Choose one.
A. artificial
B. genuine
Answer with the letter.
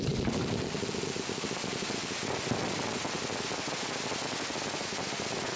B